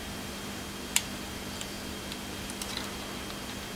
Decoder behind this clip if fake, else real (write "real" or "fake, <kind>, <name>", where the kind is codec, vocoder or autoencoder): real